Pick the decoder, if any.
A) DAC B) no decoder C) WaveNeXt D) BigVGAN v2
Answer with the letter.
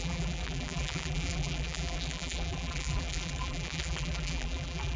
D